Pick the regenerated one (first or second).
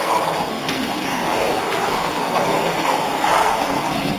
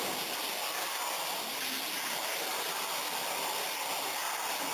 first